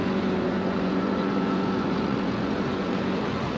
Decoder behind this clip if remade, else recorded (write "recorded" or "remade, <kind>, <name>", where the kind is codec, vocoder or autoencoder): remade, vocoder, Vocos